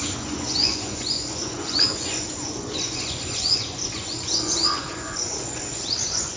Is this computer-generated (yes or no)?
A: yes